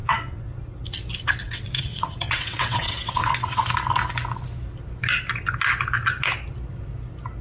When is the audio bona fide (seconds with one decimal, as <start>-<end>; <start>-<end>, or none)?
0.6-1.4; 3.6-7.4